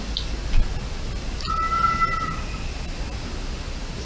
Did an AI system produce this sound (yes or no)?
no